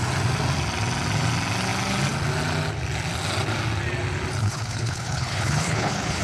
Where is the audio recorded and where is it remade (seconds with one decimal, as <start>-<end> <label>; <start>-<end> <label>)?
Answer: 0.0-4.4 recorded; 4.4-6.2 remade